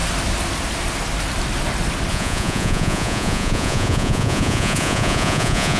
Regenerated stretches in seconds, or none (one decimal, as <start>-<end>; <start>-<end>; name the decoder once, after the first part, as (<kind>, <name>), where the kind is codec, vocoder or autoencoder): 2.1-5.8 (vocoder, Vocos)